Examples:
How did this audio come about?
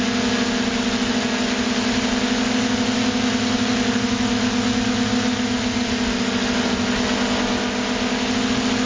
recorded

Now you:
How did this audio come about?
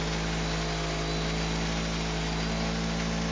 recorded